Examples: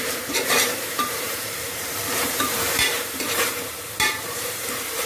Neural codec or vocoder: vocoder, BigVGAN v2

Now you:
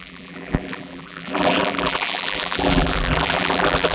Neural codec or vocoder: vocoder, BigVGAN v2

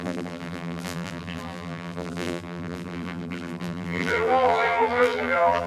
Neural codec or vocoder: vocoder, BigVGAN v2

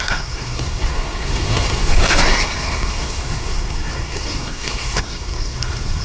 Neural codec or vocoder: codec, SNAC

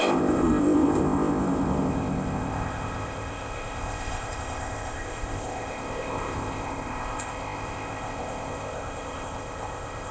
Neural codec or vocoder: codec, ZipCodec